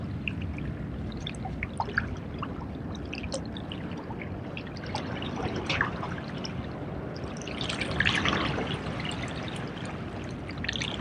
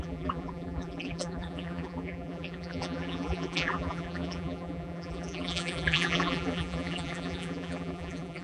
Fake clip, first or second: second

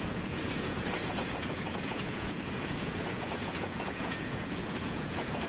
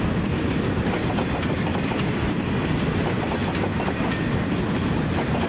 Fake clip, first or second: first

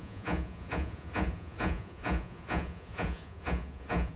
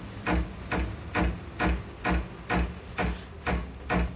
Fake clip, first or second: first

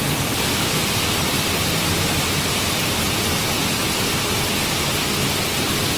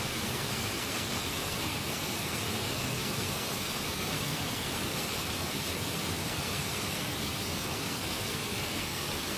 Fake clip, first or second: second